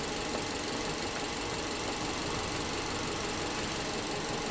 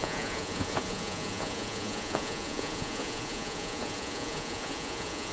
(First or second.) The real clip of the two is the first